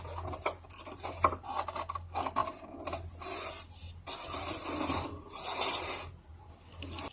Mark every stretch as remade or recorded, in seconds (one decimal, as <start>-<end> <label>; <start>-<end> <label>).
0.0-7.1 recorded